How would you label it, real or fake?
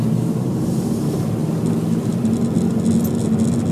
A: real